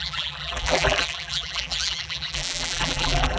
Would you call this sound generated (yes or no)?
yes